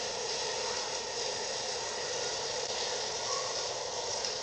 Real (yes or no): no